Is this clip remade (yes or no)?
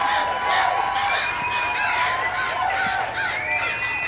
no